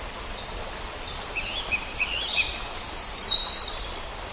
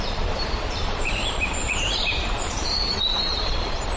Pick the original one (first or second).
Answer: first